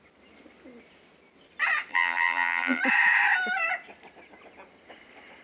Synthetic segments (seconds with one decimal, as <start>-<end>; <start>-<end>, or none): 1.9-2.8